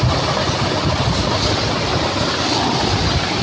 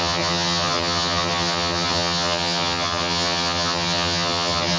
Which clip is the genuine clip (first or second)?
first